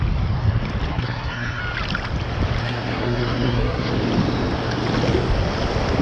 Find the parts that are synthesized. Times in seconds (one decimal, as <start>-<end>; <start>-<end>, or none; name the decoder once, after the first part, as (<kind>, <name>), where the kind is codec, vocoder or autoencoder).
0.9-1.6 (codec, SNAC); 2.6-3.9